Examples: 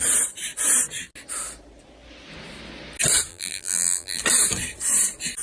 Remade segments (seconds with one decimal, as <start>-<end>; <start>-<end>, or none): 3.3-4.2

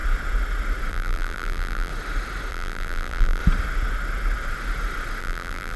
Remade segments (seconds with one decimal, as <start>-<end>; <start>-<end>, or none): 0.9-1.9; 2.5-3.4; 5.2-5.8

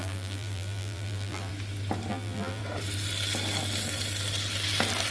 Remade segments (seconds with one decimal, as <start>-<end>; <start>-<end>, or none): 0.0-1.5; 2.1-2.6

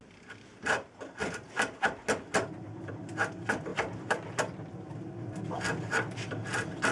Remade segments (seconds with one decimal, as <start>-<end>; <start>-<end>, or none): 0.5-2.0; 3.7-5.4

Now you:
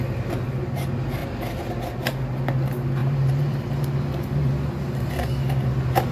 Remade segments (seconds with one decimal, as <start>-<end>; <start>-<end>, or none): 3.0-4.5